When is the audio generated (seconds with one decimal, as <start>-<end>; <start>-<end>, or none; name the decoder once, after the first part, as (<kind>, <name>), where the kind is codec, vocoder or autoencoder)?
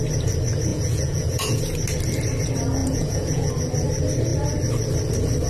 0.7-1.6 (vocoder, Vocos); 2.8-3.5